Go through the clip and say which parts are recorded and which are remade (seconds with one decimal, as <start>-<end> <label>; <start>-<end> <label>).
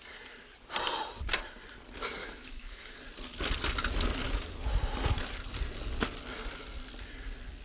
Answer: 0.0-2.2 recorded; 2.2-2.9 remade; 2.9-7.6 recorded